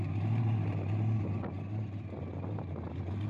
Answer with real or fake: real